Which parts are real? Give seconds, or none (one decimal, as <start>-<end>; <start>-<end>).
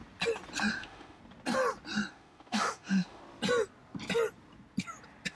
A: 0.0-0.7; 1.2-2.1; 3.2-5.3